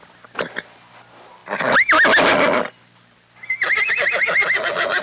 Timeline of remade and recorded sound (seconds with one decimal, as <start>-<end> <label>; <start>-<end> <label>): 0.0-5.0 recorded